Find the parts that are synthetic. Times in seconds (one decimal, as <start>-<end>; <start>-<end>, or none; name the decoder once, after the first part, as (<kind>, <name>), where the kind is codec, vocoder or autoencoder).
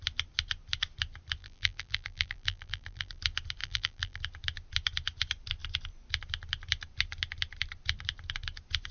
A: 1.4-3.2 (vocoder, BigVGAN v2); 3.6-4.2